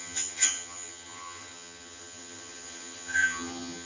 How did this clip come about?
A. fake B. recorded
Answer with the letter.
A